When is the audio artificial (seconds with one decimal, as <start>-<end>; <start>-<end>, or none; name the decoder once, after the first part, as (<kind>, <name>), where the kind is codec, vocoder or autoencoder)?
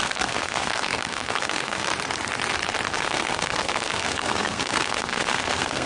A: 0.0-1.9 (codec, SNAC); 2.9-5.9